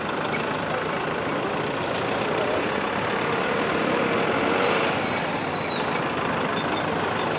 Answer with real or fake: fake